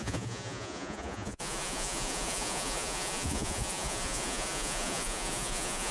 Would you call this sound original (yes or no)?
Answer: no